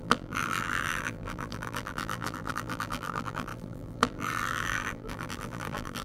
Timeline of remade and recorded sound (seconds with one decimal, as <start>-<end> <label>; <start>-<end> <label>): 0.0-6.0 remade

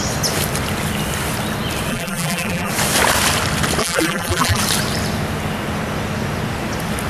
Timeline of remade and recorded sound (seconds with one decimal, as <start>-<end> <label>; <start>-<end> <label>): 0.0-1.9 recorded; 1.9-2.7 remade; 2.7-3.8 recorded; 3.8-4.6 remade; 4.6-7.1 recorded

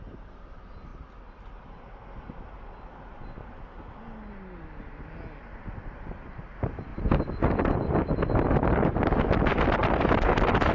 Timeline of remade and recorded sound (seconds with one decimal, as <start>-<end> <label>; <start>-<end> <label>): 0.0-0.9 recorded; 0.9-1.5 remade; 1.5-6.9 recorded; 6.9-8.1 remade; 8.1-10.7 recorded

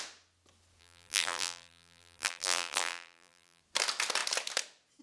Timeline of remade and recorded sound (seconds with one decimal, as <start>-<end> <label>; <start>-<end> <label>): 0.0-0.8 recorded; 0.8-3.6 remade; 3.6-5.0 recorded

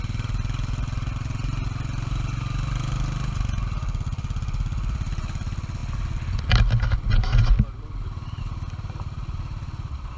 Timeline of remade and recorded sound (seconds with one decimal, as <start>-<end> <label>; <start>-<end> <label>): 0.0-10.2 recorded

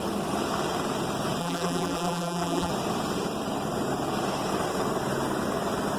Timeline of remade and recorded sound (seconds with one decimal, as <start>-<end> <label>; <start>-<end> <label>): 0.0-1.4 recorded; 1.4-2.7 remade; 2.7-6.0 recorded